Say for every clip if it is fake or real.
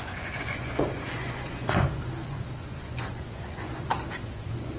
fake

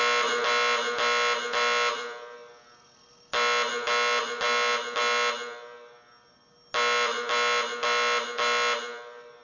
real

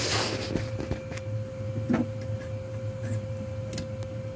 real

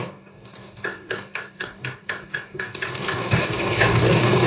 fake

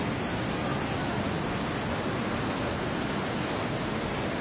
real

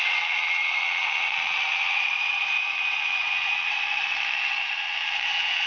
fake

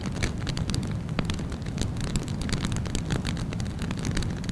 real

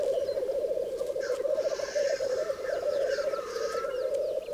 real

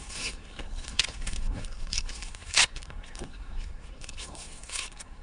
fake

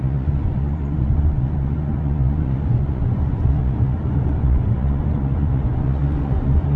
fake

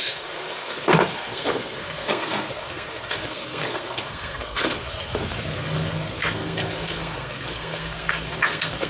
fake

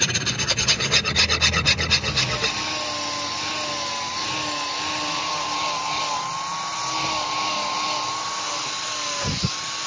real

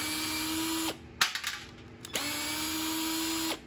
real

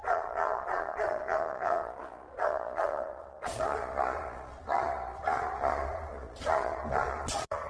fake